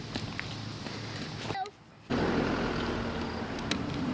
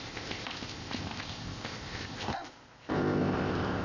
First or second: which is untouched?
first